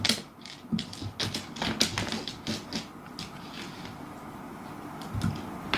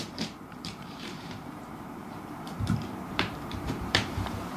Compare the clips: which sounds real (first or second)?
first